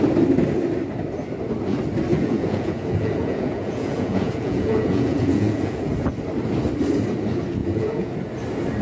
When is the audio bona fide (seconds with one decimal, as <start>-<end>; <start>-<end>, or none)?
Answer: 0.0-2.1; 5.9-7.6; 8.1-8.8